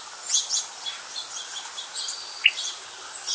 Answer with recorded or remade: recorded